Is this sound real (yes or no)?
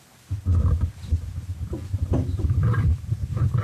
yes